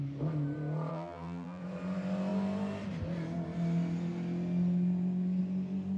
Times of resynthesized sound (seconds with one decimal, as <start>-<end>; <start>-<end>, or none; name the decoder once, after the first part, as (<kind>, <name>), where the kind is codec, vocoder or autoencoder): 0.9-1.6 (vocoder, BigVGAN v2)